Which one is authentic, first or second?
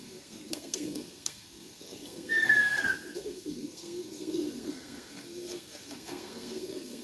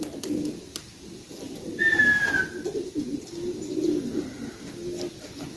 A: second